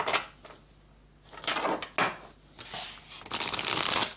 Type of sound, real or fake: real